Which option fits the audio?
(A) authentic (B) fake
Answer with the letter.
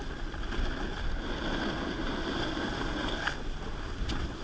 A